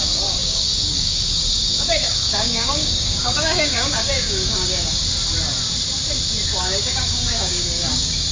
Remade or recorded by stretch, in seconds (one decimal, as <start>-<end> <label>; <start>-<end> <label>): 0.0-5.0 remade; 5.0-6.6 recorded; 6.6-8.3 remade